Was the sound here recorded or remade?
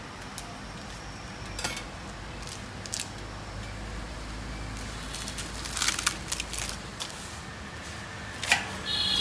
recorded